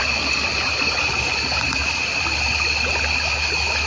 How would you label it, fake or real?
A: real